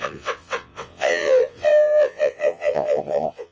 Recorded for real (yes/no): no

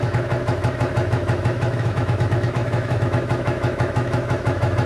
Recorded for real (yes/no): no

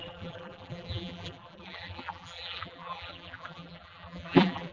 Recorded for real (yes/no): no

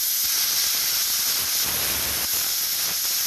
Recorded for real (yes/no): yes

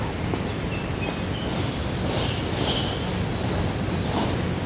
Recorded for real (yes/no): yes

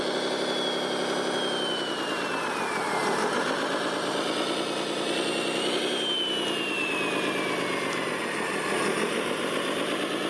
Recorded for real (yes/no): yes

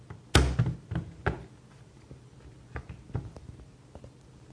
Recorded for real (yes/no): yes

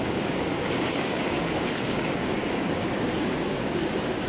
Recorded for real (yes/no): no